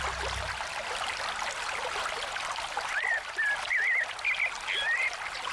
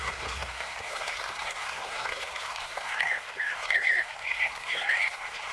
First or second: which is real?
first